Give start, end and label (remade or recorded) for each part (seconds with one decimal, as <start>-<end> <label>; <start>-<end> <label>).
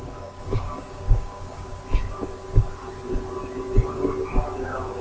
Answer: 0.0-1.7 remade; 1.7-4.6 recorded; 4.6-5.0 remade